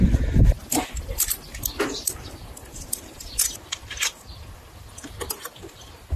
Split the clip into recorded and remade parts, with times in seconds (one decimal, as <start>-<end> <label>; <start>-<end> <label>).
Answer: 0.0-0.6 recorded; 0.6-1.4 remade; 1.4-6.2 recorded